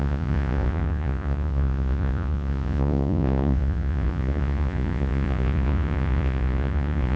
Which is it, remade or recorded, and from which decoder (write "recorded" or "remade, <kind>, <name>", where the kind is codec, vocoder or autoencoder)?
remade, vocoder, Vocos